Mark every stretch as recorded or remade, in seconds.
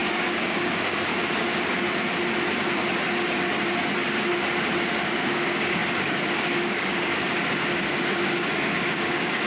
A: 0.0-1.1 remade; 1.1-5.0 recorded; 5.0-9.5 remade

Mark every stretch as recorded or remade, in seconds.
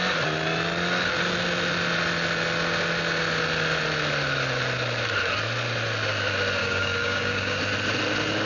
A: 0.0-6.6 recorded; 6.6-7.6 remade; 7.6-8.5 recorded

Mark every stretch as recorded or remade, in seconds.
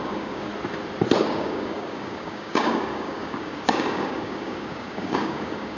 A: 0.0-0.5 remade; 0.5-1.2 recorded; 1.2-5.8 remade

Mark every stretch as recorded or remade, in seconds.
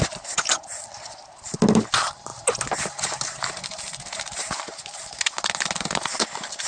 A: 0.0-6.7 recorded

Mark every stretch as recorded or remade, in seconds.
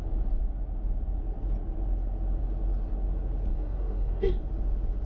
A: 0.0-3.5 recorded; 3.5-4.4 remade; 4.4-5.1 recorded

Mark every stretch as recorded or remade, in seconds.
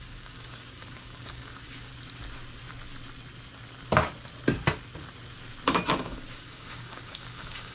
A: 0.0-1.9 remade; 1.9-5.9 recorded; 5.9-7.7 remade